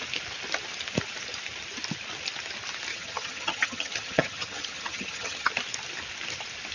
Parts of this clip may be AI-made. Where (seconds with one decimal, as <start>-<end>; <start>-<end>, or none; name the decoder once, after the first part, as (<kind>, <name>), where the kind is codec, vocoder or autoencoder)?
2.9-5.5 (vocoder, HiFi-GAN)